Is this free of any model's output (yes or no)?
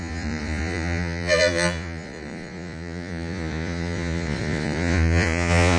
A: no